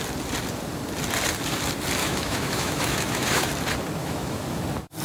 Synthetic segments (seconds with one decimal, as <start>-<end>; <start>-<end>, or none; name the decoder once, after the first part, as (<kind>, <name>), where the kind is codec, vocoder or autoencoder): 2.0-3.5 (autoencoder, DAC-VAE); 4.0-4.6